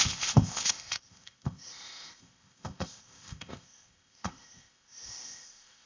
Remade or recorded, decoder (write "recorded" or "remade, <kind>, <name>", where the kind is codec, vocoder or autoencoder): remade, codec, ZipCodec